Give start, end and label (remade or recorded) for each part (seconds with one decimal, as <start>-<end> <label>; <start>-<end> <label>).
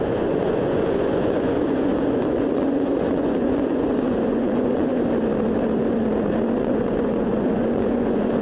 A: 0.0-4.9 remade; 4.9-6.6 recorded; 6.6-8.4 remade